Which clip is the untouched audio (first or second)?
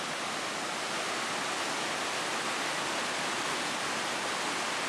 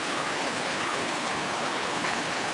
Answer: first